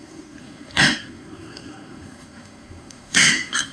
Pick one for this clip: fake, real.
fake